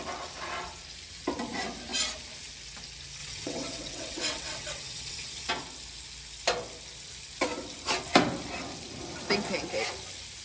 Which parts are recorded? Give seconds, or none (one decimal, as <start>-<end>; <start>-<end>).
0.0-3.2; 5.5-10.4